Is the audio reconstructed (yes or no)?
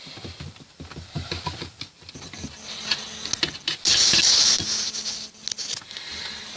no